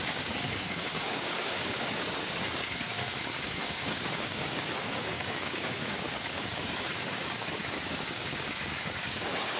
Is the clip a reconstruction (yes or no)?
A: yes